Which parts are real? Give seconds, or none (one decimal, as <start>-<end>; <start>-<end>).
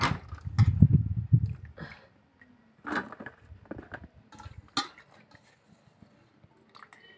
0.0-7.2